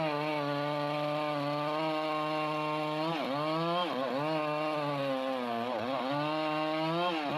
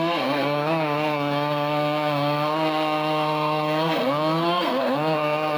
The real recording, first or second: first